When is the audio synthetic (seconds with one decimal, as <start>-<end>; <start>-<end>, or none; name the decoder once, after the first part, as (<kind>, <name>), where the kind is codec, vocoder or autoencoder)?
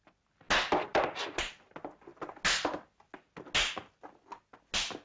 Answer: 0.9-1.5 (vocoder, BigVGAN v2)